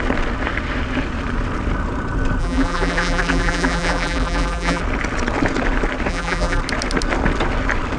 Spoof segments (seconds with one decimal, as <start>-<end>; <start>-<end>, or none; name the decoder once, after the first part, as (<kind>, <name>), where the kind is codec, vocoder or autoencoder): 2.4-4.8 (vocoder, BigVGAN v2); 6.1-6.6